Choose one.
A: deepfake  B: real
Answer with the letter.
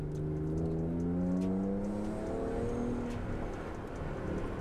B